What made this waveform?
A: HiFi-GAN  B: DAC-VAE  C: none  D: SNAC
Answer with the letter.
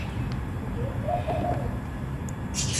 C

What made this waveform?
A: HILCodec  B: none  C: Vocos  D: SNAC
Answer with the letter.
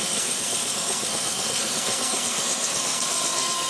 D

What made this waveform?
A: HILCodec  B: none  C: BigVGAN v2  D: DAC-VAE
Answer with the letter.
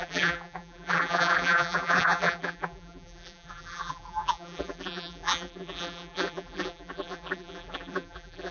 C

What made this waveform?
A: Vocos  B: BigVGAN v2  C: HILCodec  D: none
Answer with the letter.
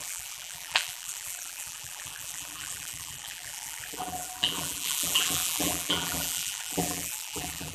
B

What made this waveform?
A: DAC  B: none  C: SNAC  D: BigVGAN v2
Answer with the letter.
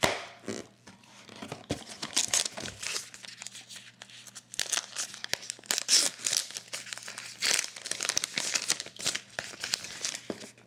B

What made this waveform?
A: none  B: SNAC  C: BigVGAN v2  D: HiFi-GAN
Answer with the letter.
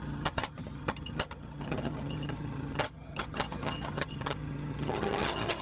D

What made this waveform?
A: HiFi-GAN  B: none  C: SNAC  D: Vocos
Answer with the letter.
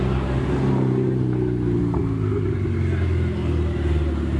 B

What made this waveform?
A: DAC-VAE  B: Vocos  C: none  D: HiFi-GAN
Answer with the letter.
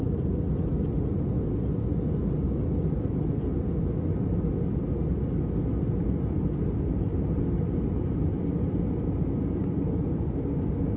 C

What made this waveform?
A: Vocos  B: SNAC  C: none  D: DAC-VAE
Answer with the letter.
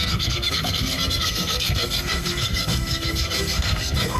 B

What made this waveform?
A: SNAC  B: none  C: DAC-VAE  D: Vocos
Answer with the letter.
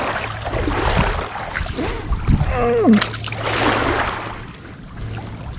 B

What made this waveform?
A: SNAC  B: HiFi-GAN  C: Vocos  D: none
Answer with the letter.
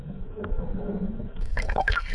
A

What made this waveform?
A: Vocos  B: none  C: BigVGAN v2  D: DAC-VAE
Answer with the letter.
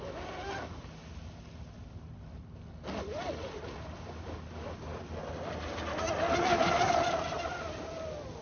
B